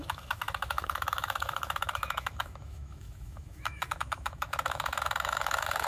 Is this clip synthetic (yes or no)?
yes